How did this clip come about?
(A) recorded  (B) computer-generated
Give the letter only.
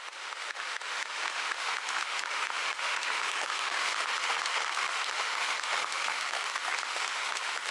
B